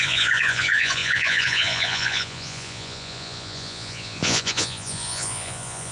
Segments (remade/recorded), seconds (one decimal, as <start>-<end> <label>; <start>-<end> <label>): 0.0-5.9 remade